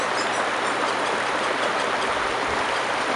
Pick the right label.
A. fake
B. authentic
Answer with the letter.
B